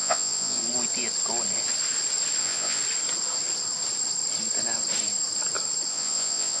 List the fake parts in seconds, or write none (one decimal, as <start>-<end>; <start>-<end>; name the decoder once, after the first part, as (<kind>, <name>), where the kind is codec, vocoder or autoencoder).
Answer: 0.0-0.6 (vocoder, Vocos); 2.4-2.8; 5.9-6.6